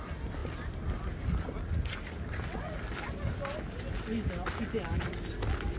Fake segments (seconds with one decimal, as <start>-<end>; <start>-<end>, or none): none